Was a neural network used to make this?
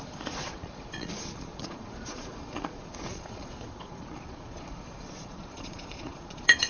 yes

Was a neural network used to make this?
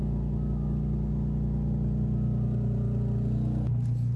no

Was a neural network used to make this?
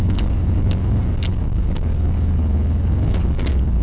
yes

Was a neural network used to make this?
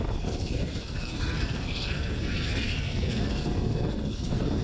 yes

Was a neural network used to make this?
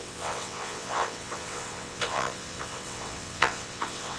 yes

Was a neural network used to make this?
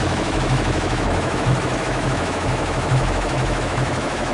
yes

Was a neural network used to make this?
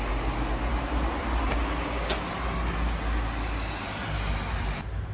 no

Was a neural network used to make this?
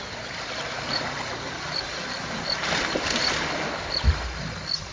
no